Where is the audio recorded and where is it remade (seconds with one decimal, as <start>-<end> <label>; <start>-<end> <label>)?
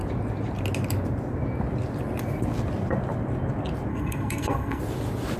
0.0-3.9 recorded; 3.9-4.8 remade; 4.8-5.4 recorded